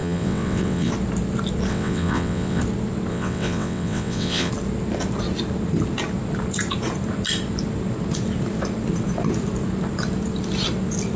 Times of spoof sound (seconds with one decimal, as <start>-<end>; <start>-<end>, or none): 0.0-0.9; 1.7-2.6; 3.1-4.5